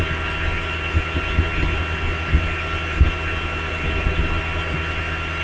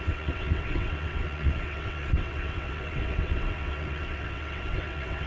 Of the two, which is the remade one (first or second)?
second